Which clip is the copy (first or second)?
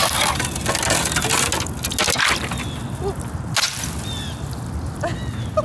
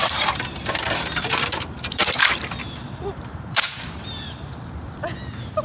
second